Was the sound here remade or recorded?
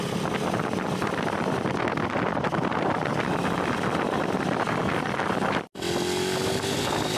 recorded